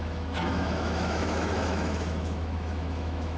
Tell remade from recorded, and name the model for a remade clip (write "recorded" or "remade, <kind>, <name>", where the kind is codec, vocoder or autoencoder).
remade, autoencoder, DAC-VAE